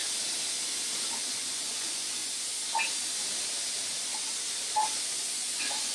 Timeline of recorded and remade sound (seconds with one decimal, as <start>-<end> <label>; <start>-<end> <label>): 0.0-1.3 recorded; 1.3-2.2 remade; 2.2-5.0 recorded; 5.0-5.9 remade